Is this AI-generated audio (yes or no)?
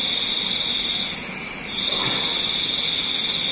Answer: no